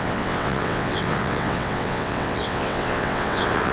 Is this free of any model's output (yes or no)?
no